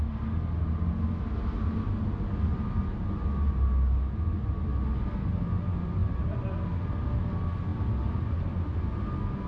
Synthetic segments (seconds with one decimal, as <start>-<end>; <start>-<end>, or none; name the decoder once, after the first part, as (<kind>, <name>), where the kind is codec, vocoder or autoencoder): none